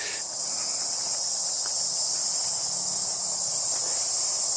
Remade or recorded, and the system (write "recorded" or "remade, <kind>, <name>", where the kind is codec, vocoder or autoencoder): recorded